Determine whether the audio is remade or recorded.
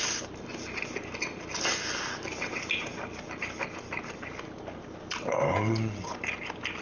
recorded